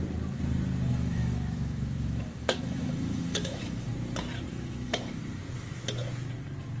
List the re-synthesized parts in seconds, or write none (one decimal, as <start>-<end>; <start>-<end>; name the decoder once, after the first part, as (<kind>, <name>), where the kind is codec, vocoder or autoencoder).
0.9-3.9 (autoencoder, DAC-VAE); 4.5-5.2